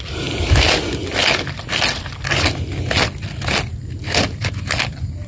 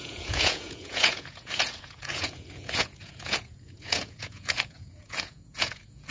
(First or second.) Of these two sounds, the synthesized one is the second